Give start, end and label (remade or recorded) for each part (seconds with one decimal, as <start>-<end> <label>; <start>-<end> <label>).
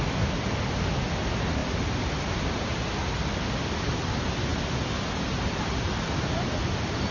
0.0-7.1 recorded